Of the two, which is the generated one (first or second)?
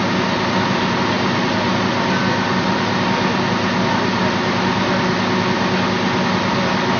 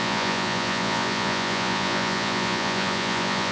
second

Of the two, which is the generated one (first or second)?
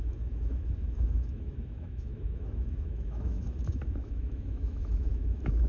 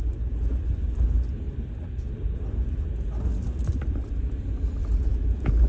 first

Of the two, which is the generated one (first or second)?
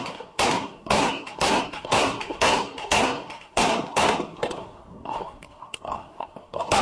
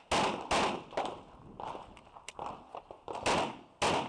first